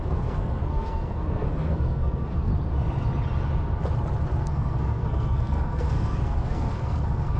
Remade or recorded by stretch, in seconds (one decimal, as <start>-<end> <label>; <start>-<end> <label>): 0.0-2.5 remade; 2.5-4.4 recorded; 4.4-7.4 remade